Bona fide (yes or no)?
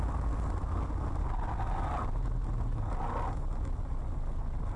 yes